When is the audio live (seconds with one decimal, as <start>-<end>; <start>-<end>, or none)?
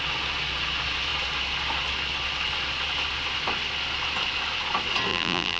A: 0.0-5.1